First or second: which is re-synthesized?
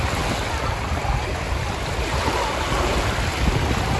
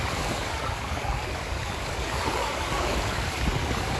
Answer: second